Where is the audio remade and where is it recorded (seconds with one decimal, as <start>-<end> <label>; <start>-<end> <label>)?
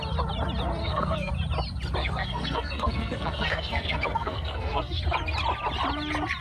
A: 0.0-0.8 recorded; 0.8-1.3 remade; 1.3-2.0 recorded; 2.0-5.0 remade; 5.0-6.4 recorded